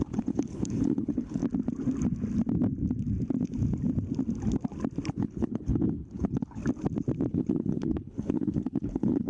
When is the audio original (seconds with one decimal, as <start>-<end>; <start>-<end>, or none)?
1.4-5.1; 6.6-7.3